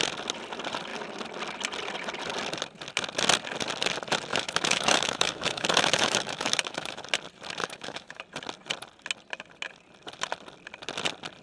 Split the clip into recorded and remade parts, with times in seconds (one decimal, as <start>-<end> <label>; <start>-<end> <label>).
0.0-4.3 recorded; 4.3-7.0 remade; 7.0-7.6 recorded; 7.6-8.2 remade; 8.2-11.4 recorded